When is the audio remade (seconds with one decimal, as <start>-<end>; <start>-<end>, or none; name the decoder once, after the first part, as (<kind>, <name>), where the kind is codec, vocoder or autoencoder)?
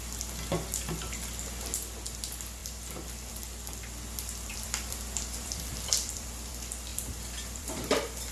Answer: 4.5-6.5 (vocoder, BigVGAN v2); 6.9-8.3